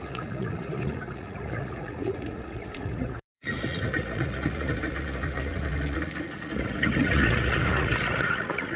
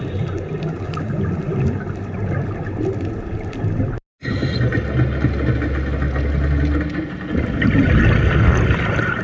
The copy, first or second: first